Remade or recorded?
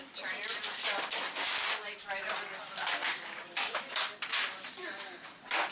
recorded